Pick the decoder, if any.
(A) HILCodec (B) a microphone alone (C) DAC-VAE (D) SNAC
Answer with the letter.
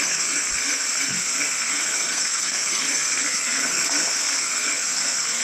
D